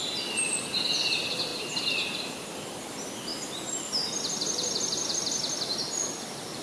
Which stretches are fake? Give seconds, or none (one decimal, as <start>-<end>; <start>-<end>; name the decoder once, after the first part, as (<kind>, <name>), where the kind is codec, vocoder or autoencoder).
none